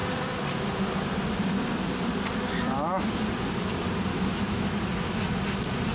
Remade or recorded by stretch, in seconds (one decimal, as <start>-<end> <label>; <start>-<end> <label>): 0.0-4.1 recorded; 4.1-4.8 remade; 4.8-5.9 recorded